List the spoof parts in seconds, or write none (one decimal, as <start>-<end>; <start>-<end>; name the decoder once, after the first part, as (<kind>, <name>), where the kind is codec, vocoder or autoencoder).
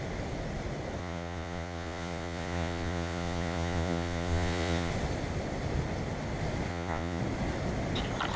1.0-4.9 (vocoder, Vocos); 6.7-7.2